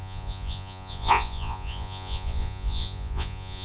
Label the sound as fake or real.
fake